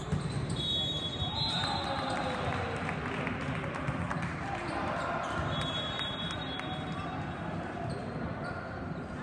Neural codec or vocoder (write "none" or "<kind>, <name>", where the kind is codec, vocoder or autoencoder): none